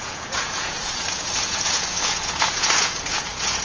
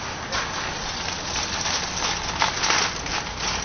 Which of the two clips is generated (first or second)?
first